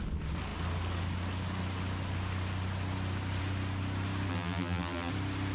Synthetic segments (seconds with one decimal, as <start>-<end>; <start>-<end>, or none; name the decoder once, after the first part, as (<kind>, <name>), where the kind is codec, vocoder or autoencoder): 4.3-5.1 (vocoder, BigVGAN v2)